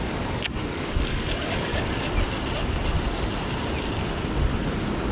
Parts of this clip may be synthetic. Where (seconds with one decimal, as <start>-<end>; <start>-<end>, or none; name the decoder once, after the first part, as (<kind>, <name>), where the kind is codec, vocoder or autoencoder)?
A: 0.0-1.7 (codec, DAC)